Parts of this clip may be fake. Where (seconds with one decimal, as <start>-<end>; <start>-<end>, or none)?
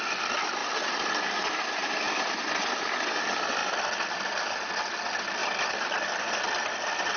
none